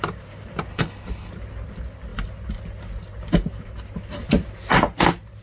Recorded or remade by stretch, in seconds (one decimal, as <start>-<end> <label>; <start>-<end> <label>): 0.0-0.7 recorded; 0.7-1.3 remade; 1.3-5.4 recorded